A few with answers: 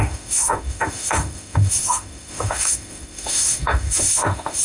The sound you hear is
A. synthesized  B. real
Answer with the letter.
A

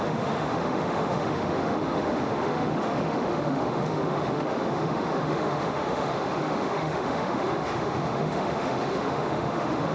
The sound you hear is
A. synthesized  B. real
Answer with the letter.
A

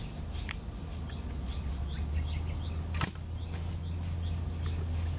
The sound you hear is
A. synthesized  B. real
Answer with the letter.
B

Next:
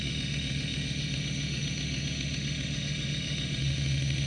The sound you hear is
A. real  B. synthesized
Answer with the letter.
B